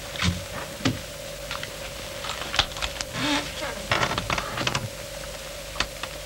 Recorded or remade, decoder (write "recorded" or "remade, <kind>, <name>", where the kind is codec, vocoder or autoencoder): recorded